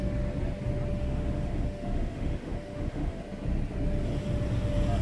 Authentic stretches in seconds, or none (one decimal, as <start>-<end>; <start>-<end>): 0.0-0.9; 3.2-5.0